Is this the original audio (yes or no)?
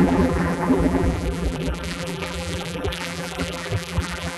no